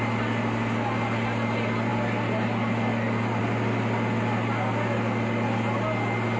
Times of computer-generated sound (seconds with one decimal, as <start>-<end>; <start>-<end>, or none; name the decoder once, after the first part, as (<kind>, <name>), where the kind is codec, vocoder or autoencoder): none